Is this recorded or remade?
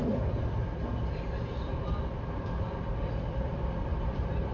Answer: remade